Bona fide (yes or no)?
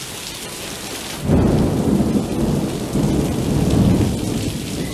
yes